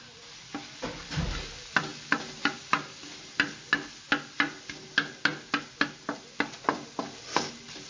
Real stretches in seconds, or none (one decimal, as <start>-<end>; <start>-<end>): 0.0-7.9